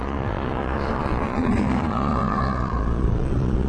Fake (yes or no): yes